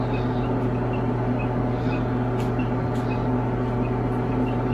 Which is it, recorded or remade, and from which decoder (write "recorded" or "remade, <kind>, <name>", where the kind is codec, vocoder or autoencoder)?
recorded